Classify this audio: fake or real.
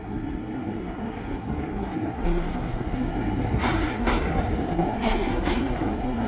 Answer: fake